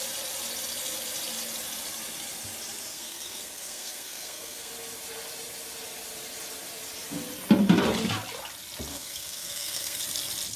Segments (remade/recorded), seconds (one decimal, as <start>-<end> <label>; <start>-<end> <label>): 0.0-2.9 recorded; 2.9-4.7 remade; 4.7-8.9 recorded; 8.9-10.0 remade; 10.0-10.6 recorded